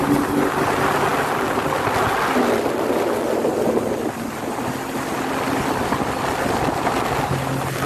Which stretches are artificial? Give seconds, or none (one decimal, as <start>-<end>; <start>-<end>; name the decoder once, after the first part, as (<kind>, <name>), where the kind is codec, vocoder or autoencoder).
none